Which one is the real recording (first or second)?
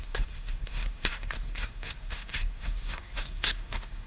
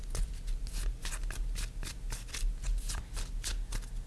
second